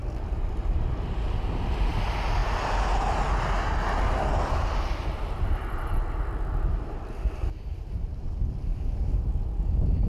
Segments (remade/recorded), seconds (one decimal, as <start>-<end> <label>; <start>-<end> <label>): 0.0-10.1 recorded